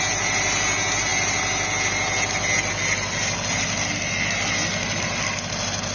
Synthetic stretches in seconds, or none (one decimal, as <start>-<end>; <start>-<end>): none